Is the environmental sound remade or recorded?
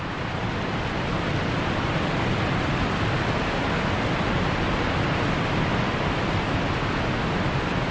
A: recorded